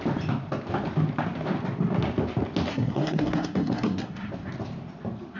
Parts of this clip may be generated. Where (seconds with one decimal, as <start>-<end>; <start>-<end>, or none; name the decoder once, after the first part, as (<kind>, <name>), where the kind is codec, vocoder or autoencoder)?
2.7-4.3 (codec, SNAC)